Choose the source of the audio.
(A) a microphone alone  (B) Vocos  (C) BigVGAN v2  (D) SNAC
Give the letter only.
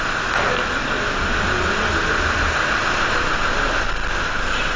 A